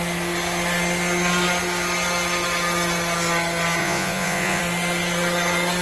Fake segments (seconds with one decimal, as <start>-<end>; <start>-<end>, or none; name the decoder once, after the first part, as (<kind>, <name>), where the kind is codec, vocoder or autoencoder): 3.8-4.6 (vocoder, Vocos)